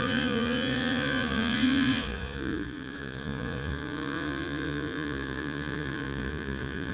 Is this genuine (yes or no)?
no